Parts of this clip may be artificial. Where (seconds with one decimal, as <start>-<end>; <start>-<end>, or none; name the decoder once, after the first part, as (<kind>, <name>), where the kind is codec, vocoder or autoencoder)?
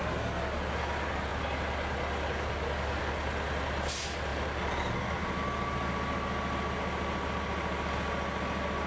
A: none